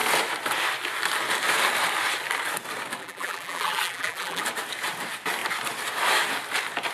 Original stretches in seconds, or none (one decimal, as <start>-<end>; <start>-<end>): 0.0-3.0; 4.4-6.9